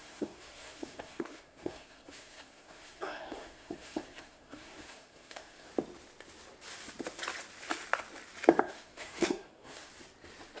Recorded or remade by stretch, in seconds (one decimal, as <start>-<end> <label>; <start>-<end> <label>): 0.0-5.7 remade; 5.7-8.6 recorded; 8.6-9.9 remade; 9.9-10.6 recorded